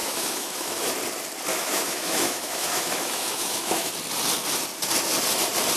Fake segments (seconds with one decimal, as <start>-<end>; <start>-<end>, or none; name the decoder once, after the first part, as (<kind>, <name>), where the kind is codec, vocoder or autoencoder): 0.0-0.9 (autoencoder, DAC-VAE); 1.5-3.9